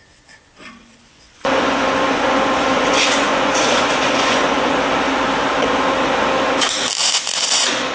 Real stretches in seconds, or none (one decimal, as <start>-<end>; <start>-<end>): 4.7-7.0